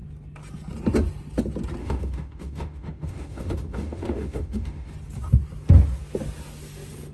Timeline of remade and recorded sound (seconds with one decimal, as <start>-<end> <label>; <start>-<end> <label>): 0.0-1.8 recorded; 1.8-4.9 remade; 4.9-7.1 recorded